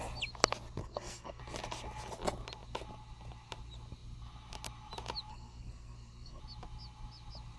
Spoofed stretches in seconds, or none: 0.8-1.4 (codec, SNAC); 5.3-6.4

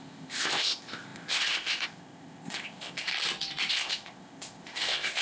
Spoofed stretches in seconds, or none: 0.0-3.1 (codec, ZipCodec); 3.7-5.2

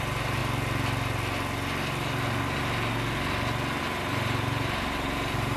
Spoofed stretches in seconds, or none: 0.0-0.4 (vocoder, BigVGAN v2); 3.8-5.6

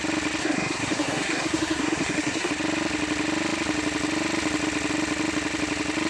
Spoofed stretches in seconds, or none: 0.4-2.5 (codec, SNAC)